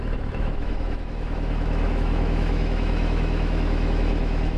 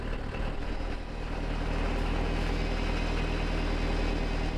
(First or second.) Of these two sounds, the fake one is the first